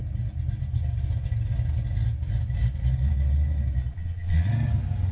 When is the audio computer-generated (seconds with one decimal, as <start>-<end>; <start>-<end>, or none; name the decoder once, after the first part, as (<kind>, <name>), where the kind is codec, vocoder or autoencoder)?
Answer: 3.9-4.5 (vocoder, Vocos)